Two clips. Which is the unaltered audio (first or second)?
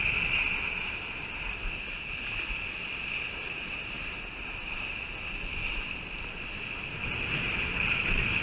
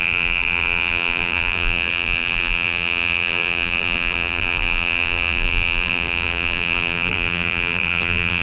first